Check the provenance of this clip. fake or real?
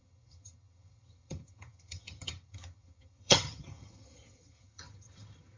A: fake